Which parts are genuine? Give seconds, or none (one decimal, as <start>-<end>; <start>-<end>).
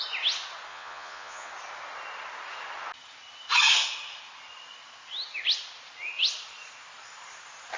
0.0-0.7; 1.5-7.8